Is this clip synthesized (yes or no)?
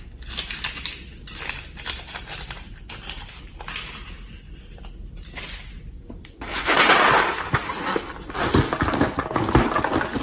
no